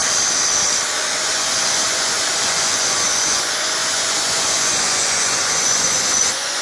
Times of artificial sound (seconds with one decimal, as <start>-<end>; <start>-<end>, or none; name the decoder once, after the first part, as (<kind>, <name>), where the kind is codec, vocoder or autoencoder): 1.0-6.6 (vocoder, Vocos)